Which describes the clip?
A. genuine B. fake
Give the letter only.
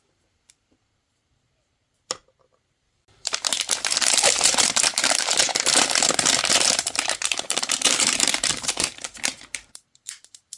B